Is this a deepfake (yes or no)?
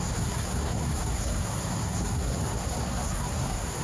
yes